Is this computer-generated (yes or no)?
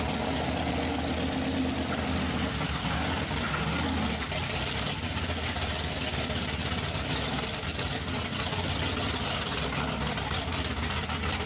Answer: no